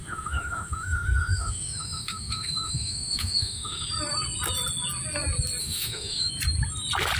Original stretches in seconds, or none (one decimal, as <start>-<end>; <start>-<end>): 3.9-5.6; 6.3-7.2